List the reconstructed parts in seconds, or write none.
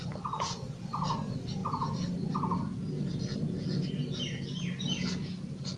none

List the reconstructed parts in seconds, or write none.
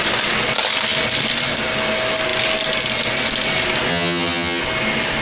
3.9-4.6 (vocoder, HiFi-GAN)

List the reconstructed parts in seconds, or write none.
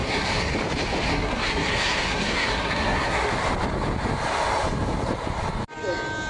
0.0-0.5 (codec, SNAC); 1.1-3.3